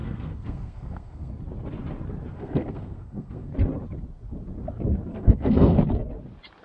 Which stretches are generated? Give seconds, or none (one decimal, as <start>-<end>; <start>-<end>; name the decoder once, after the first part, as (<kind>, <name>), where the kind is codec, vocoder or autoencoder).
0.0-1.3 (codec, SNAC); 2.3-3.5; 5.1-5.8